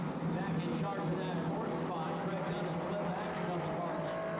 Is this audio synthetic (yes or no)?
no